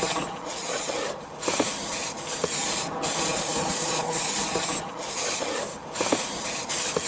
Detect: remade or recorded remade